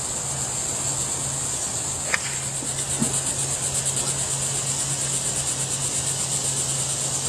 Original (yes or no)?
yes